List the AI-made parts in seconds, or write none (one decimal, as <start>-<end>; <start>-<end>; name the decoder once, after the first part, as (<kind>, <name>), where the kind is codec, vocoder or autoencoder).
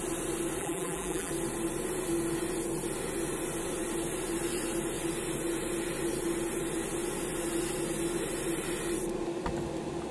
0.6-1.3 (vocoder, BigVGAN v2)